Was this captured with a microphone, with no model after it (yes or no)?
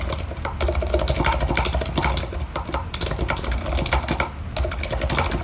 yes